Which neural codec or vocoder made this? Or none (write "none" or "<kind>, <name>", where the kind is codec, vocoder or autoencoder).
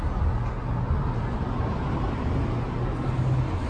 none